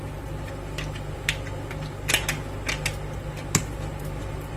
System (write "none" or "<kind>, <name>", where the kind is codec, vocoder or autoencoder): none